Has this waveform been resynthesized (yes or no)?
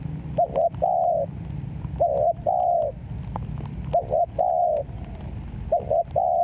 no